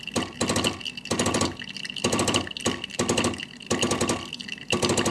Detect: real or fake real